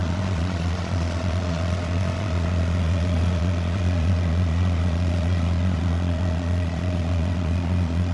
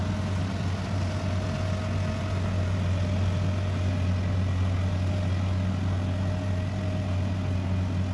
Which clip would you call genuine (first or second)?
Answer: second